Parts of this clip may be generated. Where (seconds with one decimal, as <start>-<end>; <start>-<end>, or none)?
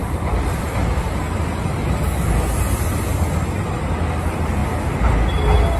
none